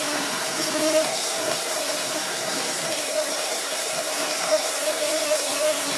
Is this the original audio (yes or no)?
no